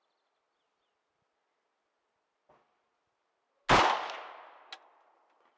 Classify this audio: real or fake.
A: real